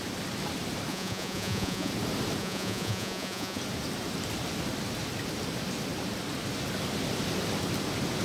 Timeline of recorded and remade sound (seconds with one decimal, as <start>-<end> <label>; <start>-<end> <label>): 0.0-0.9 recorded; 0.9-1.9 remade; 1.9-2.4 recorded; 2.4-3.6 remade; 3.6-8.2 recorded